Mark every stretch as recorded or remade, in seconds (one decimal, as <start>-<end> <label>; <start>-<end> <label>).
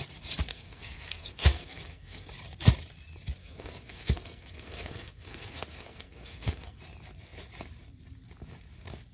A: 0.0-0.5 recorded; 0.5-2.3 remade; 2.3-3.4 recorded; 3.4-6.8 remade; 6.8-9.1 recorded